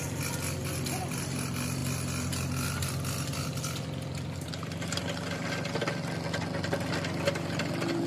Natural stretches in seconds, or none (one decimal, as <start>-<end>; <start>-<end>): 0.0-8.1